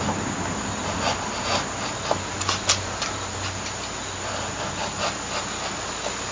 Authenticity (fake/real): real